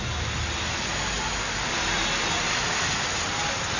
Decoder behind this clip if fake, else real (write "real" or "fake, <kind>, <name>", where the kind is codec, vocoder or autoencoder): real